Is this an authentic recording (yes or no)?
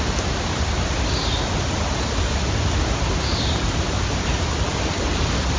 yes